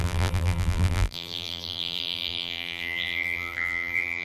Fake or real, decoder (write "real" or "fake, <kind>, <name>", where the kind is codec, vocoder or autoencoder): fake, vocoder, BigVGAN v2